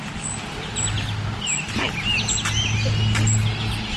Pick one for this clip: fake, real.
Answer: real